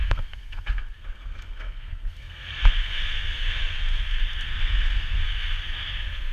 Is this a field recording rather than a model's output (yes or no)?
no